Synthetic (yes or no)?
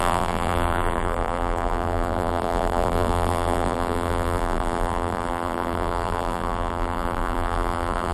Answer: yes